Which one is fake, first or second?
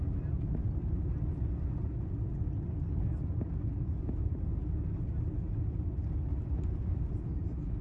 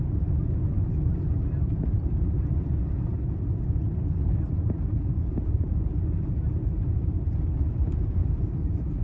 second